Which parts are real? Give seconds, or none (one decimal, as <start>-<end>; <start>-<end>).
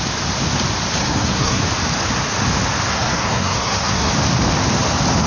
0.0-1.0; 1.6-2.9; 4.1-5.3